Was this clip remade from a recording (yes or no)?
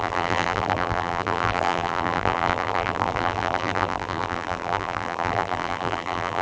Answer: yes